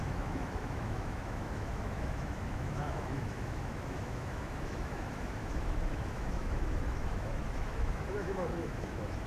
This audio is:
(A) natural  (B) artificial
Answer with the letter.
B